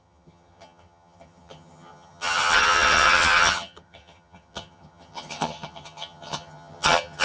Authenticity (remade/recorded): remade